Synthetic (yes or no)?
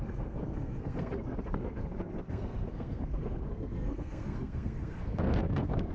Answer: yes